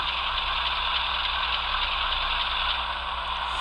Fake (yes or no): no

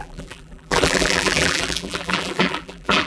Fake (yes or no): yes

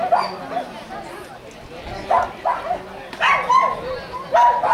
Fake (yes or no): no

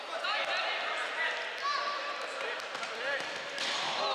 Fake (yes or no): no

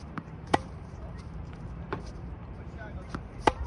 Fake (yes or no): yes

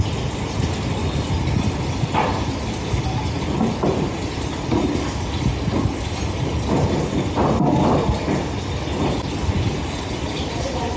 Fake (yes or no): no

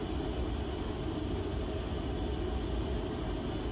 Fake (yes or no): no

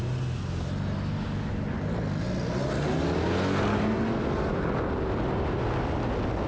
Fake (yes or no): no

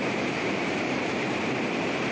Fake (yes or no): yes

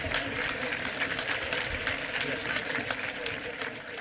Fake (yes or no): yes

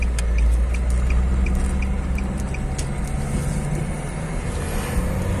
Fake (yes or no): no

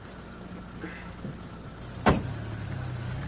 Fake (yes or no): no